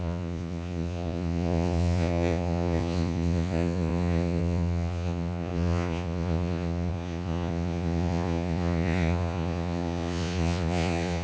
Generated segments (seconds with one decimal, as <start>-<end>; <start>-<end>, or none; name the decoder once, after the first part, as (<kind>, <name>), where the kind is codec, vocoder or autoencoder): 0.0-11.2 (vocoder, Vocos)